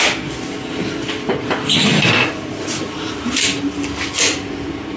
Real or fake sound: real